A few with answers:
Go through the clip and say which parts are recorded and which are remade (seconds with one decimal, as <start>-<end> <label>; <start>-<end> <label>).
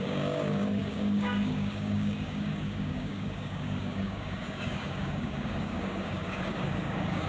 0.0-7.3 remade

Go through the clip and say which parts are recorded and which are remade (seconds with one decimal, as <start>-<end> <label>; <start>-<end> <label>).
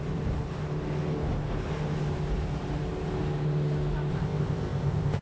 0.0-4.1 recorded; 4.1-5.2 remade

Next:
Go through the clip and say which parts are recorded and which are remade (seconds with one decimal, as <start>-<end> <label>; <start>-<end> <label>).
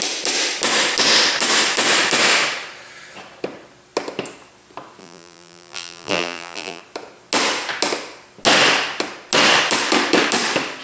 0.0-5.0 recorded; 5.0-6.8 remade; 6.8-10.8 recorded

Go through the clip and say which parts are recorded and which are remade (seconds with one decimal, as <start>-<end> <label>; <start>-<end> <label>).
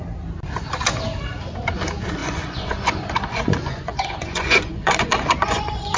0.0-2.2 recorded; 2.2-6.0 remade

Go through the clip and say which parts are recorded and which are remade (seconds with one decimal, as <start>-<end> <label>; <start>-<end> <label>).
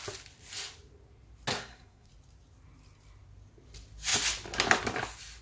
0.0-1.5 recorded; 1.5-2.1 remade; 2.1-5.4 recorded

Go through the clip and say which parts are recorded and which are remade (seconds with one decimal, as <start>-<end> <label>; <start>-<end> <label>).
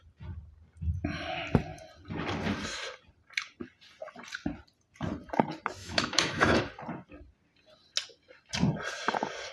0.0-5.8 recorded; 5.8-6.6 remade; 6.6-9.5 recorded